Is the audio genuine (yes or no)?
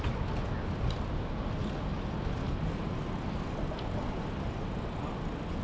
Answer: yes